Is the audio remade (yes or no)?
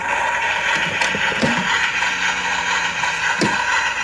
no